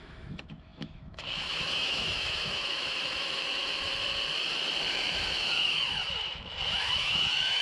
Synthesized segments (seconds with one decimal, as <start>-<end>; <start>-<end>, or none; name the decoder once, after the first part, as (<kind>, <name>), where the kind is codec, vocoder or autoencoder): 0.0-3.9 (autoencoder, DAC-VAE); 4.9-7.6